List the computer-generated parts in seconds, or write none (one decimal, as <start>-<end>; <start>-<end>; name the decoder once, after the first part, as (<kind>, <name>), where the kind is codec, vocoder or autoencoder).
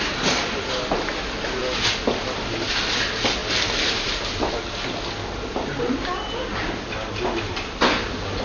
none